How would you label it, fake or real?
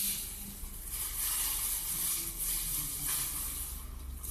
real